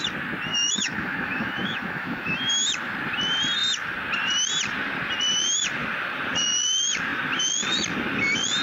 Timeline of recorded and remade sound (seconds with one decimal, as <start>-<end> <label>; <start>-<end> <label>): 0.0-0.5 recorded; 0.5-2.4 remade; 2.4-8.6 recorded